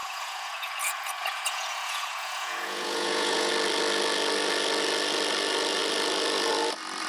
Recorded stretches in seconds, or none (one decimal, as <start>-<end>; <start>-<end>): 3.5-7.1